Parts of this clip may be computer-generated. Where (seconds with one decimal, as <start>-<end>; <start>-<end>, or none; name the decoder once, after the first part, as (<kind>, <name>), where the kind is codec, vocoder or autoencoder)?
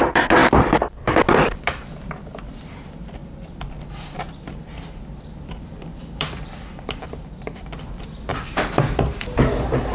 0.0-3.2 (vocoder, BigVGAN v2); 5.1-8.3; 9.4-9.9